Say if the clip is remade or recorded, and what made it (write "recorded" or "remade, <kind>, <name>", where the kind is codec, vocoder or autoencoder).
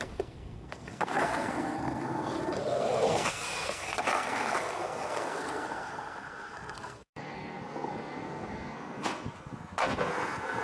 remade, codec, SNAC